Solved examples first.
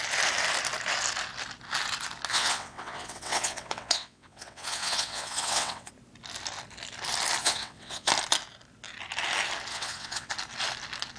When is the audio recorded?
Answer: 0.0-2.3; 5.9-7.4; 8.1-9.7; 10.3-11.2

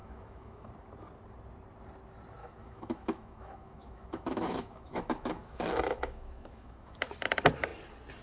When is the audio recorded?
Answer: 0.7-2.4; 7.0-8.2

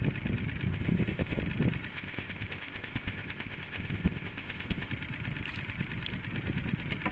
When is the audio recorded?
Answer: 0.0-0.7; 1.4-1.9; 4.9-7.1

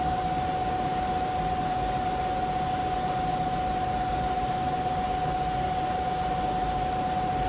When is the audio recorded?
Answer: 0.0-7.5

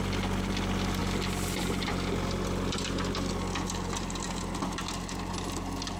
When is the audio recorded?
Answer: 0.0-6.0

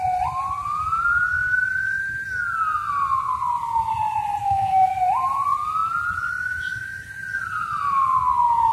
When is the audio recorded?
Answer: 0.0-4.4; 5.0-8.7